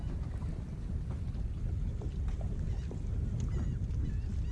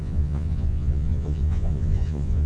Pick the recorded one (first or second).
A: first